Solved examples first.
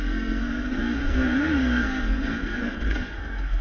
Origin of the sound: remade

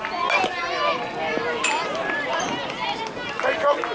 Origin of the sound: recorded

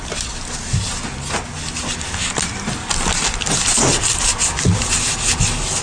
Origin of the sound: recorded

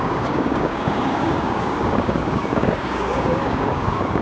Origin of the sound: remade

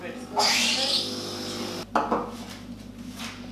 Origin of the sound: recorded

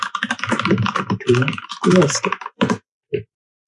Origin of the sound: remade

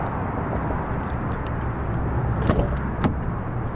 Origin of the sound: recorded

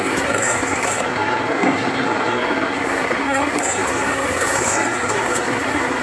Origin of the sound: remade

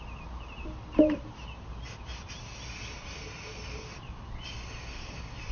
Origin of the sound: recorded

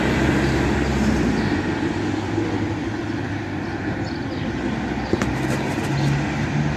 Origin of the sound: recorded